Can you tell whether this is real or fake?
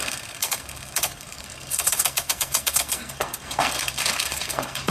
fake